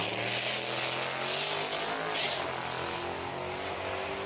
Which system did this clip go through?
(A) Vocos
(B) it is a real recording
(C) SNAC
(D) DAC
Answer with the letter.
B